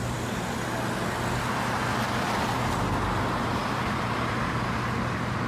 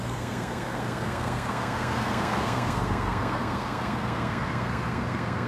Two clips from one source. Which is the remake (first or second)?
second